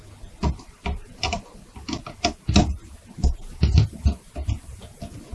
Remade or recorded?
recorded